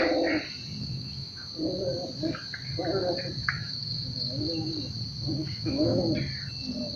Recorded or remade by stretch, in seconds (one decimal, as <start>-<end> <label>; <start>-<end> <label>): 0.0-0.8 recorded; 0.8-1.5 remade; 1.5-3.4 recorded; 3.4-4.7 remade; 4.7-5.4 recorded; 5.4-6.0 remade; 6.0-7.0 recorded